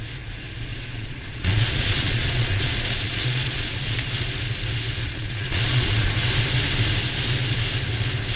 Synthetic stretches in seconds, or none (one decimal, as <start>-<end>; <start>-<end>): 0.7-4.0; 5.0-6.1